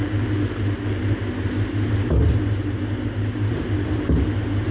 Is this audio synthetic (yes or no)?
no